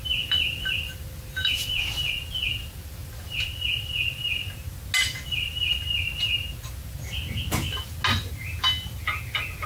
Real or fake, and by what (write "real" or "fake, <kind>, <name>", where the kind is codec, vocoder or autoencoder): real